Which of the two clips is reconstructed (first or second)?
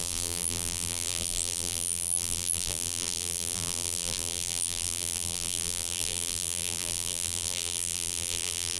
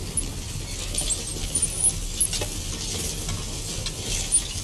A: first